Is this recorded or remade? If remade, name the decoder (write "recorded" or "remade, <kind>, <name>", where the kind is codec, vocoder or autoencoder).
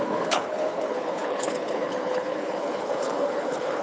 remade, codec, HILCodec